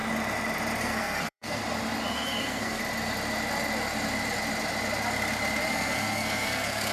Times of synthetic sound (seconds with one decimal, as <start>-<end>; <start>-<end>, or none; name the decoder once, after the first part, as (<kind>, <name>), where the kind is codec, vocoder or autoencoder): 0.8-1.6 (codec, SNAC); 2.1-2.8; 5.7-6.9